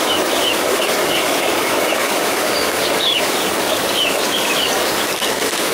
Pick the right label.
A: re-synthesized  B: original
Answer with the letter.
A